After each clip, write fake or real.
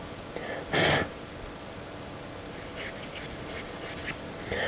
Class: real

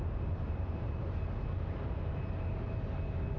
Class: real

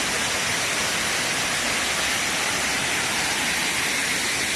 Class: real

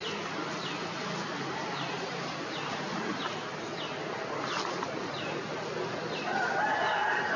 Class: real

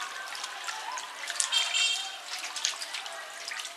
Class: real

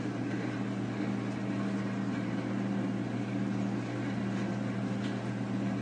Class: fake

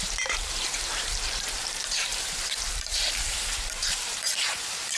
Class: fake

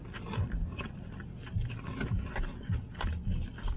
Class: real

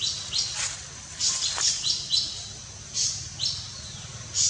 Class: real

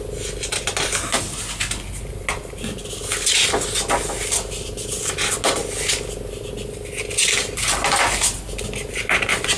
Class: real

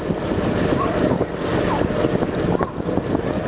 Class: fake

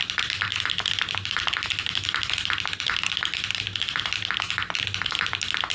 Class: fake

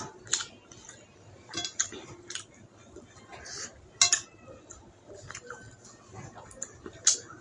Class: real